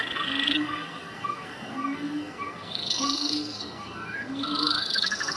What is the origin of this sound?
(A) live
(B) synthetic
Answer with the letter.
B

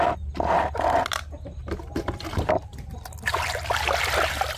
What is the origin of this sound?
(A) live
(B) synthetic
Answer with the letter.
A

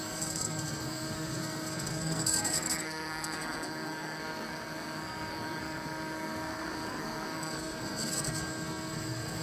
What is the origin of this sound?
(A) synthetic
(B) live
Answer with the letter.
A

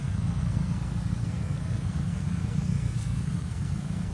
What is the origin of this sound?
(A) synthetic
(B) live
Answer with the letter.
A